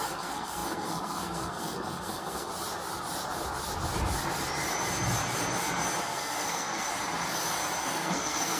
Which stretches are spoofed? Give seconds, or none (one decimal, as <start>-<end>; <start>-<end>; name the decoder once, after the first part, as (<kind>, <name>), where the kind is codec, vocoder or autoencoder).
0.0-2.5 (codec, SNAC); 6.0-6.9; 7.8-8.6